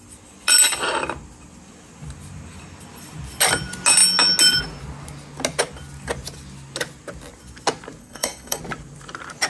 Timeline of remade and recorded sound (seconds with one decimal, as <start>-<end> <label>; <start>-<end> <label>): 0.0-8.0 recorded; 8.0-8.6 remade; 8.6-9.5 recorded